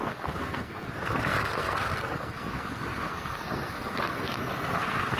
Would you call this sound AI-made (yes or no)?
yes